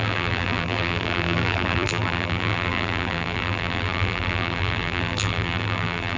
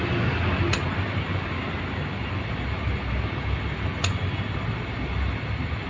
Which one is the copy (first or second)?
first